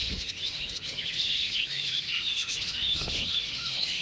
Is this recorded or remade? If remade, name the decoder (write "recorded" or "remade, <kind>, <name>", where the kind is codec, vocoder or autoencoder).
remade, autoencoder, DAC-VAE